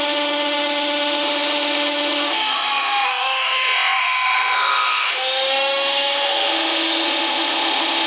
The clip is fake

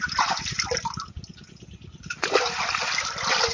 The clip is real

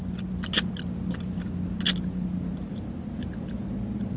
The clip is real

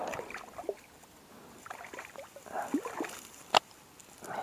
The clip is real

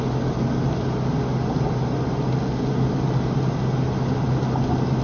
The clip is real